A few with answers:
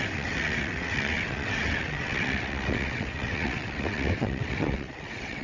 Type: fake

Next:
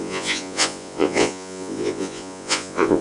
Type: fake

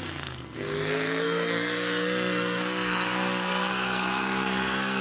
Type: fake